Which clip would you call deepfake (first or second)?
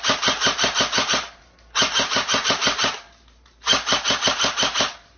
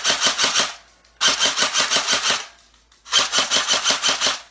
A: first